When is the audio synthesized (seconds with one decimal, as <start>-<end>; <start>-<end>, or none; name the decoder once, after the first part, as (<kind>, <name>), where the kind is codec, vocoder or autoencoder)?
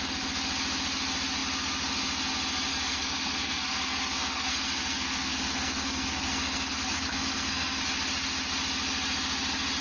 2.7-7.8 (codec, SNAC)